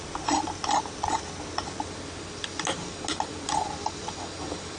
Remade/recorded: recorded